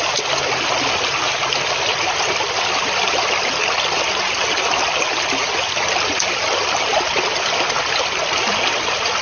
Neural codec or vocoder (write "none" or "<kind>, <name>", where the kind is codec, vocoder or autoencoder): none